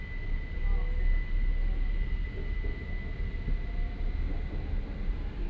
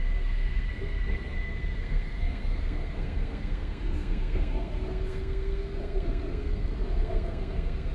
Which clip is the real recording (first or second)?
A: first